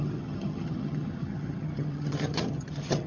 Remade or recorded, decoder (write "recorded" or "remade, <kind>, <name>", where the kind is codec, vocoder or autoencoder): remade, vocoder, HiFi-GAN